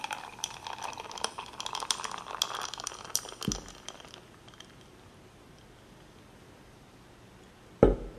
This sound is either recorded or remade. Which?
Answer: recorded